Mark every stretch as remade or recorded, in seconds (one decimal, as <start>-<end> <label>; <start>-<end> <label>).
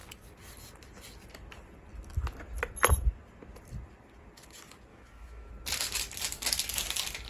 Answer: 0.0-4.9 recorded; 4.9-5.5 remade; 5.5-7.3 recorded